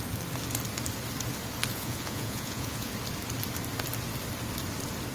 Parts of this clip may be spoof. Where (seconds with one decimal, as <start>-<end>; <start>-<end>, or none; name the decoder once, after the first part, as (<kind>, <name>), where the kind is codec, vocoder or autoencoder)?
1.7-2.9 (vocoder, Vocos)